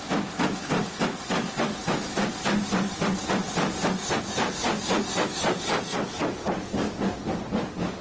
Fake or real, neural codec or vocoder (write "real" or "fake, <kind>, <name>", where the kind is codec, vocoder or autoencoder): real